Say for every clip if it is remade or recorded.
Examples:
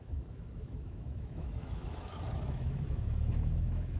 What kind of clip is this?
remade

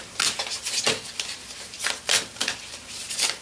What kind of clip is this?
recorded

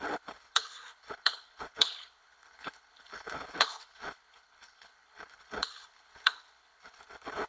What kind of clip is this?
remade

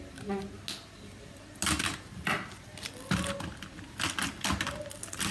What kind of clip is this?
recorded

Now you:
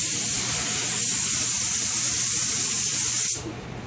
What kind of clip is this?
recorded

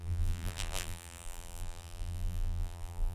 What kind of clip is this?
remade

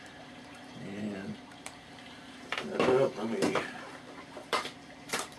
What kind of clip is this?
remade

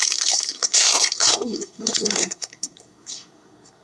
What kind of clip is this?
remade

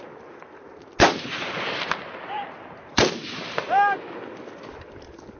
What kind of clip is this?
recorded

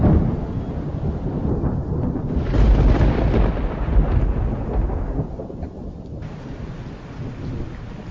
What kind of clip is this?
recorded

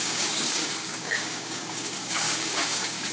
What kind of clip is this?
remade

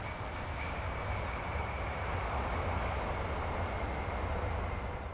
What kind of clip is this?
recorded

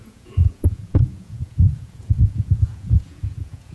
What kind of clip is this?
remade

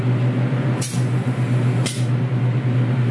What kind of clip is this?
recorded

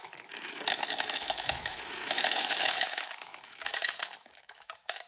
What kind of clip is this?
remade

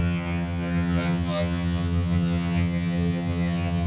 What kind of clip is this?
remade